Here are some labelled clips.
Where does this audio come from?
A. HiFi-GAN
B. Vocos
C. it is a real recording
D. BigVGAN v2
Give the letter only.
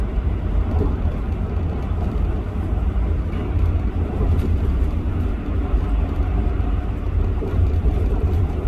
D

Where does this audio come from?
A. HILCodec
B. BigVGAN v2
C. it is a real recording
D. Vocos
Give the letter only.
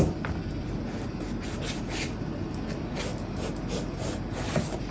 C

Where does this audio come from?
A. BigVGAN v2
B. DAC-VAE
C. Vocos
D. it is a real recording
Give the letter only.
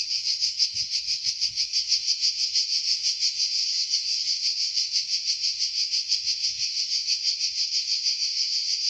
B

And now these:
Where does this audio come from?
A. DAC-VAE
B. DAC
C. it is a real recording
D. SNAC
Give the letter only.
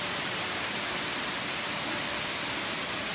C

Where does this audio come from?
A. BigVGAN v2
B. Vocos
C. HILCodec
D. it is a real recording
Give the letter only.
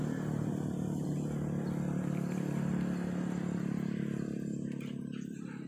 D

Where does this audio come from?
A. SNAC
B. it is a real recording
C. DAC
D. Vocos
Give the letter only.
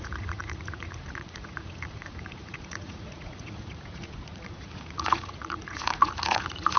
D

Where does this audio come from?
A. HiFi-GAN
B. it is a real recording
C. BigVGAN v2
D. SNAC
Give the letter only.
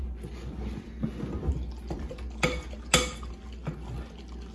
B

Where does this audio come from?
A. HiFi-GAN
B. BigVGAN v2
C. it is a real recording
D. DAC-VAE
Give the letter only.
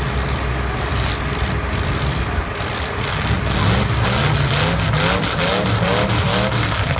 C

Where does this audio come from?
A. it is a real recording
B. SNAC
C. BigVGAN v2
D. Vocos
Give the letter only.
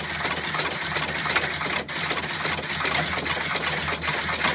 A